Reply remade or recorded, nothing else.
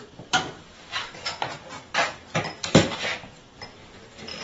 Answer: remade